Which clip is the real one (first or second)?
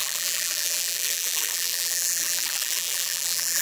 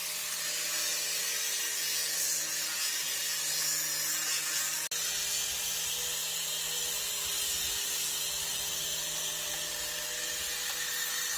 second